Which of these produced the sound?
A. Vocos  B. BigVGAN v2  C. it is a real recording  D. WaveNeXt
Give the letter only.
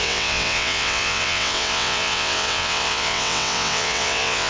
D